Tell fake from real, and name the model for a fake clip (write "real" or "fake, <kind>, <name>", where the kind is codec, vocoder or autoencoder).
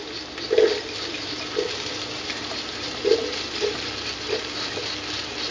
real